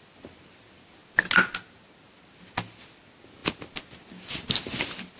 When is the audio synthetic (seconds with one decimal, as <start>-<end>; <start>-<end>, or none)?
none